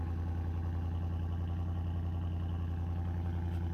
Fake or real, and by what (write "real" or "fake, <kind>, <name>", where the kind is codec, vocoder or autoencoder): real